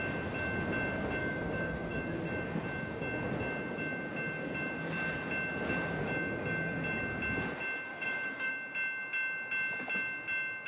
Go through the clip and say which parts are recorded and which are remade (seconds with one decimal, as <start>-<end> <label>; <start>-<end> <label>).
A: 0.0-1.2 recorded; 1.2-2.0 remade; 2.0-7.9 recorded; 7.9-8.5 remade; 8.5-10.7 recorded